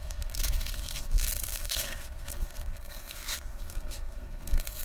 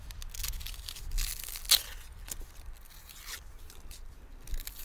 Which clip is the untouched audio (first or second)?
second